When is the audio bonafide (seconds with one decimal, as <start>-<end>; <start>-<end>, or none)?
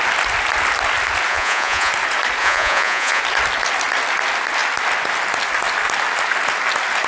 0.0-1.3; 1.9-2.4; 3.2-7.1